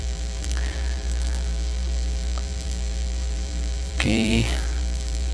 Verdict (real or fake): fake